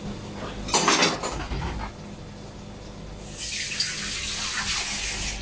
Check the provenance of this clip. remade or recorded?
recorded